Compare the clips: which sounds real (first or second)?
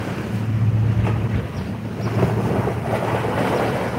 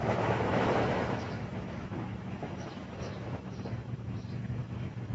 first